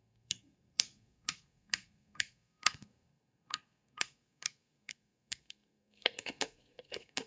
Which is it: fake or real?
fake